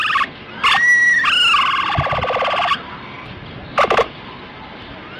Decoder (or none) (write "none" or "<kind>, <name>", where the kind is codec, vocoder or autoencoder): none